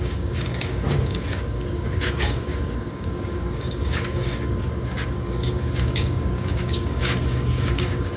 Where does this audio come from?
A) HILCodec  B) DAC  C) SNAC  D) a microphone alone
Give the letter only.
B